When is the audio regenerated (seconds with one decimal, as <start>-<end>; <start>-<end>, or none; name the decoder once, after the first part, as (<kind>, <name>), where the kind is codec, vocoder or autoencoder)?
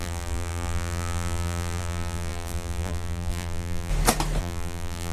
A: 0.0-3.9 (vocoder, BigVGAN v2); 4.4-5.1